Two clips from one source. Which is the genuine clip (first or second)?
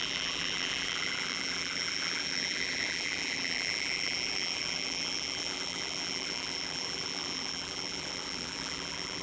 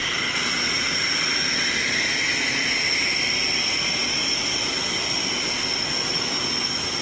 second